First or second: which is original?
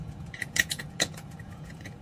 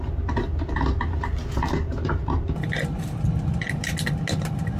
second